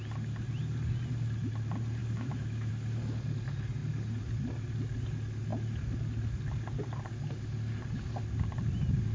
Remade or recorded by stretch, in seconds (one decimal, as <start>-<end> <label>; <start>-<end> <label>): 0.0-2.0 recorded; 2.0-2.7 remade; 2.7-9.1 recorded